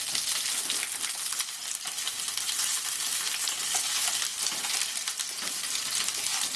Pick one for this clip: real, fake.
real